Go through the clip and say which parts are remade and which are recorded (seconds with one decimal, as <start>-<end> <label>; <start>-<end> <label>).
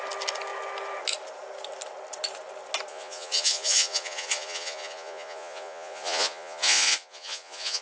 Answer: 0.0-2.9 recorded; 2.9-7.8 remade